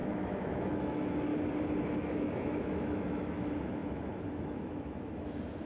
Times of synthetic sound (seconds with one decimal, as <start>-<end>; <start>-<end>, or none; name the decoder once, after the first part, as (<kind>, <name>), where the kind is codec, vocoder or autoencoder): 0.0-1.3 (autoencoder, DAC-VAE); 1.8-5.7